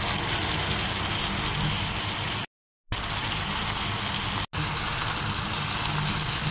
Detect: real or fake real